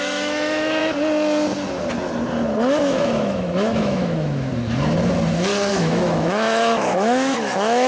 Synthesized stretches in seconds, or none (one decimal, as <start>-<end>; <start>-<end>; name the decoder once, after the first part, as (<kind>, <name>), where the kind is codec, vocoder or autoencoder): 0.0-0.8 (autoencoder, DAC-VAE); 2.8-4.5; 5.7-7.9